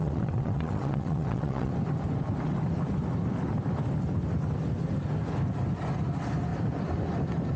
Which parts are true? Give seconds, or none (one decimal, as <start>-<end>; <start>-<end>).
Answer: 1.7-7.6